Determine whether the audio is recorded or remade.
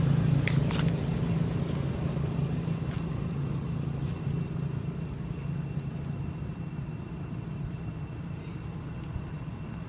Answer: recorded